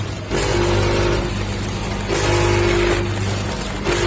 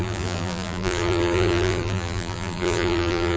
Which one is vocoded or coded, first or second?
second